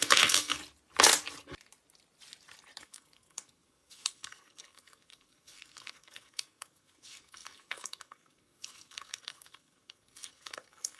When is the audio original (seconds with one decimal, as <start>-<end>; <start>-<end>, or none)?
0.6-2.8